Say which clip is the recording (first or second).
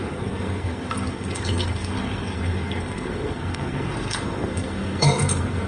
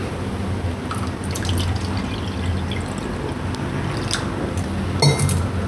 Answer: second